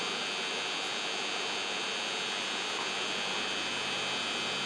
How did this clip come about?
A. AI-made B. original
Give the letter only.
B